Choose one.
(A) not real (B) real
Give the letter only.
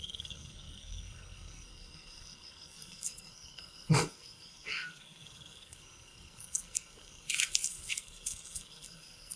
A